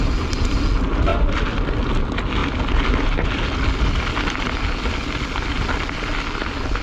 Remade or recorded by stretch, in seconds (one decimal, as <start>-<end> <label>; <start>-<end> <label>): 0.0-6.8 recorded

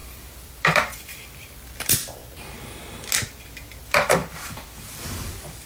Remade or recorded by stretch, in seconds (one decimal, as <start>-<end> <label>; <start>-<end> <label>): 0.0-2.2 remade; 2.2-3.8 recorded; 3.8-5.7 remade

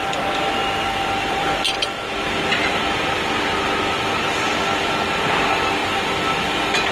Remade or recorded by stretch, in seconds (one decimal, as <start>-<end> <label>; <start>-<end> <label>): 0.0-0.6 recorded; 0.6-3.8 remade; 3.8-6.9 recorded